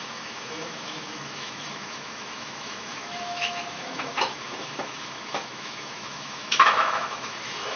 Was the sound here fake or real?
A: fake